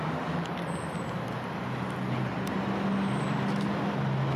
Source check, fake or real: real